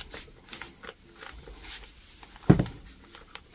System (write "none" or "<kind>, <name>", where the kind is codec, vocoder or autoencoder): none